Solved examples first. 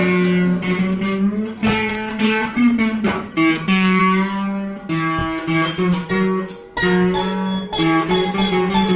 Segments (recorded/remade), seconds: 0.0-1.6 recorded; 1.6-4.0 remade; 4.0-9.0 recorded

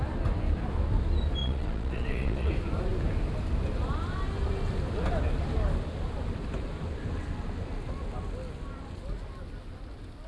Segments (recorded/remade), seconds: 0.0-1.4 recorded; 1.4-2.5 remade; 2.5-10.3 recorded

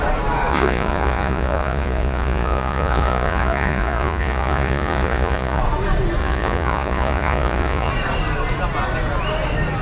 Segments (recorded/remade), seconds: 0.0-0.5 recorded; 0.5-5.6 remade; 5.6-6.2 recorded; 6.2-7.9 remade; 7.9-9.8 recorded

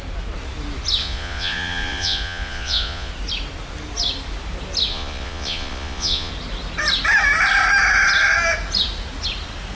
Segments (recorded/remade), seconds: 0.0-1.0 recorded; 1.0-3.1 remade; 3.1-4.9 recorded; 4.9-6.3 remade; 6.3-9.7 recorded

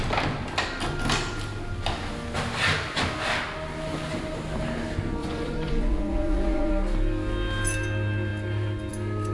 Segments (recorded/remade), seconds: 0.0-5.2 recorded; 5.2-6.7 remade; 6.7-9.3 recorded

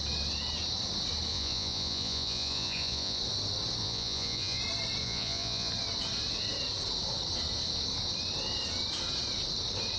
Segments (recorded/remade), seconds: 0.0-1.3 recorded; 1.3-3.2 remade; 3.2-3.8 recorded; 3.8-4.6 remade; 4.6-5.0 recorded; 5.0-5.7 remade; 5.7-10.0 recorded